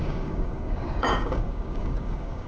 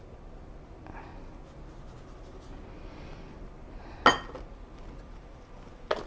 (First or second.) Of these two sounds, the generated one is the first